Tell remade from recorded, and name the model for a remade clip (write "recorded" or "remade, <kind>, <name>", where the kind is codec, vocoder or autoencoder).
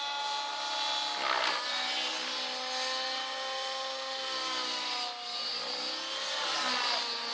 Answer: recorded